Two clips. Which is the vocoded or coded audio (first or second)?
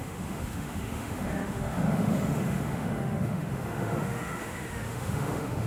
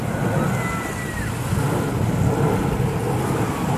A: first